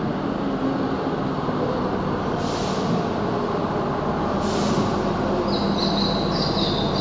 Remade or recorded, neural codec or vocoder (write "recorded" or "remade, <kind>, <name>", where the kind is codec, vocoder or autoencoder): recorded